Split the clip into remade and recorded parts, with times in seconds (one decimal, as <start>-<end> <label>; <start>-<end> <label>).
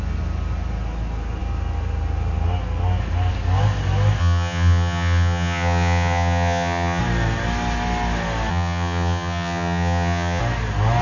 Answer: 0.0-4.2 recorded; 4.2-7.0 remade; 7.0-8.5 recorded; 8.5-10.4 remade; 10.4-11.0 recorded